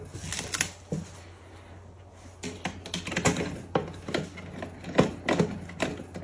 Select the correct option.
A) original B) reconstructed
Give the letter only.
A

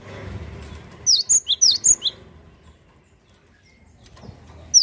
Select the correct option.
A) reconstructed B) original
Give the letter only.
B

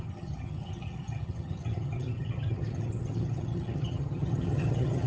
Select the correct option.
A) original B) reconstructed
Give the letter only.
B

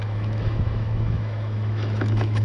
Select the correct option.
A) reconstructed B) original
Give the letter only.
A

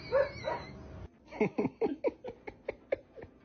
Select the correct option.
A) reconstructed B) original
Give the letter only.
B